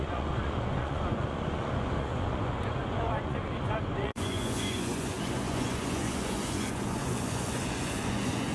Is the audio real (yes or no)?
no